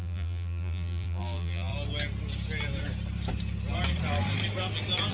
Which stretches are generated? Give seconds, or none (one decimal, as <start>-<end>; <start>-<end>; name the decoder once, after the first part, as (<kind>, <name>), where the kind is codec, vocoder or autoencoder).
0.0-1.7 (vocoder, BigVGAN v2)